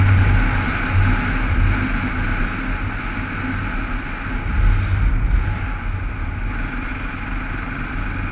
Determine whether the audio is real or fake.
real